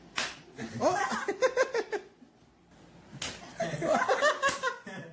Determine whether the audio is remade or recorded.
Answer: recorded